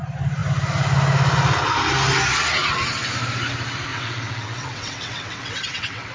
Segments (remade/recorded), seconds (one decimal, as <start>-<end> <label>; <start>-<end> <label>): 0.0-3.9 recorded; 3.9-6.1 remade